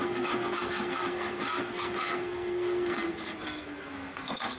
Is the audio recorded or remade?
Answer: remade